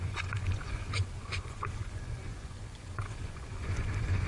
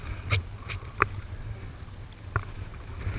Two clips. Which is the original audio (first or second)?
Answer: second